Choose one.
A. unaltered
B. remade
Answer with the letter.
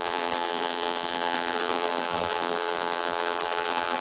B